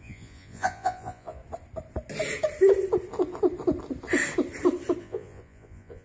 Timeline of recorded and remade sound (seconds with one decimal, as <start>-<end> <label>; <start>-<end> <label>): 0.0-1.4 remade; 1.4-5.0 recorded; 5.0-6.0 remade